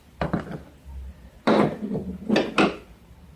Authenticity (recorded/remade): remade